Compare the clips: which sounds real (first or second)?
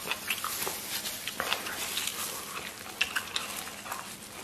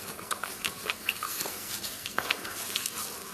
first